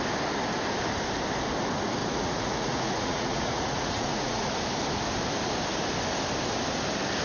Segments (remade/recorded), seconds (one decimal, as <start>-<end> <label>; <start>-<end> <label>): 0.0-2.0 recorded; 2.0-4.5 remade; 4.5-7.2 recorded